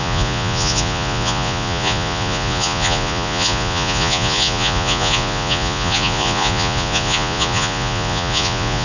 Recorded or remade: remade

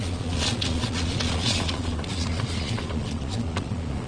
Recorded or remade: remade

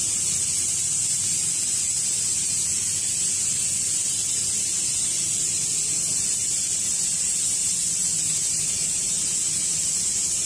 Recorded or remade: recorded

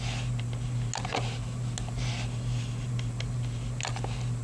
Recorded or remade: recorded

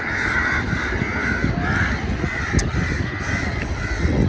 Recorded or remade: recorded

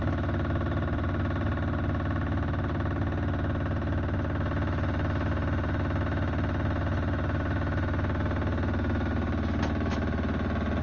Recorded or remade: recorded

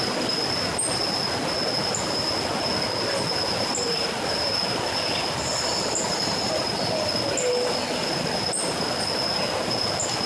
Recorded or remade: recorded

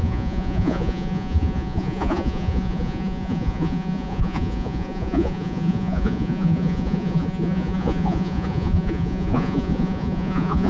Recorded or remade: remade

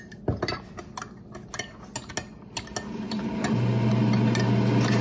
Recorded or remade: recorded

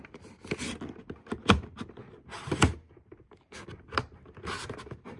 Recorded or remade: recorded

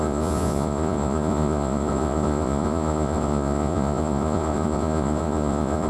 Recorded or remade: remade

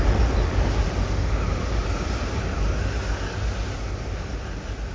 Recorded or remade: recorded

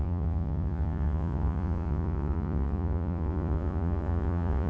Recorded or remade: remade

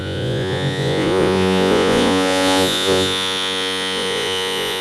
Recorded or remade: remade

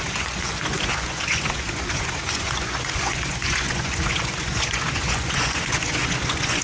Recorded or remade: remade